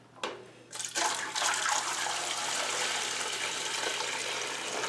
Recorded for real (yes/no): yes